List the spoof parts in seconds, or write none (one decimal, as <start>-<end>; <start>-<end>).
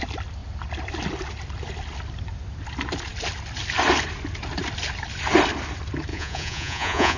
6.1-7.2